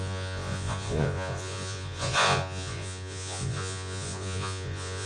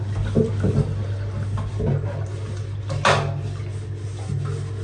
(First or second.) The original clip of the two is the second